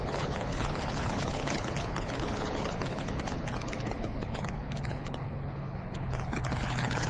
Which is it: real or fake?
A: fake